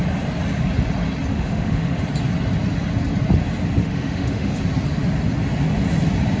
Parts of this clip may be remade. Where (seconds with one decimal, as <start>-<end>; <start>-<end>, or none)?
1.3-2.0; 3.8-4.6